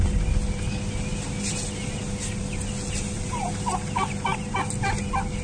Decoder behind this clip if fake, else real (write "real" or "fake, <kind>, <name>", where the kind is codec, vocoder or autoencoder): real